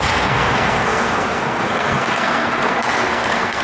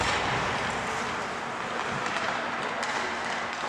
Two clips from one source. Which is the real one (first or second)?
second